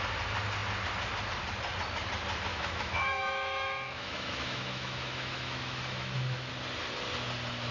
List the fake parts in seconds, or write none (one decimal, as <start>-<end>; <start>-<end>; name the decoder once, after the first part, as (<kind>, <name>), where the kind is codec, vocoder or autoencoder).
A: 2.5-6.5 (autoencoder, DAC-VAE)